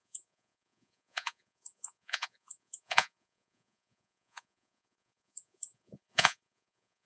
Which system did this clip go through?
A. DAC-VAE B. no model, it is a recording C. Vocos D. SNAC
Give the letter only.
C